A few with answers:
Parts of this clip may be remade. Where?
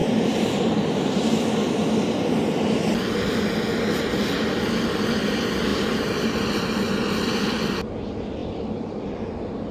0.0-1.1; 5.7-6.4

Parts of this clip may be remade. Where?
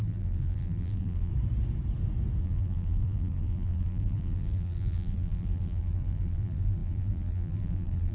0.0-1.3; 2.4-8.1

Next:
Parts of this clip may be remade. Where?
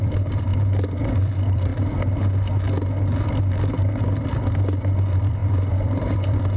0.0-0.5; 1.0-1.7; 3.7-6.6